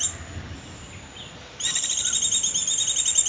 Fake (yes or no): no